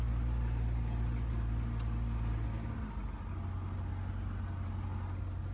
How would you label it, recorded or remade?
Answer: recorded